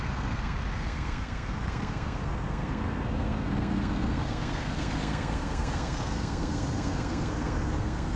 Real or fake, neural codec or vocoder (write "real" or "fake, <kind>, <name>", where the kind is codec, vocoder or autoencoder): fake, codec, SNAC